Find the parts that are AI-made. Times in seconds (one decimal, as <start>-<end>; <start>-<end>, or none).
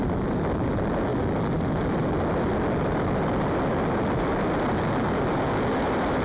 none